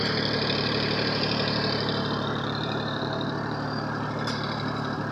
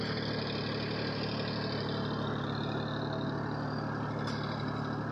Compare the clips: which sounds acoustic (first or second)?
second